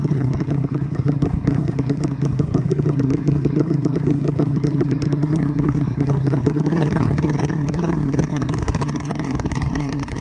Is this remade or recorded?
remade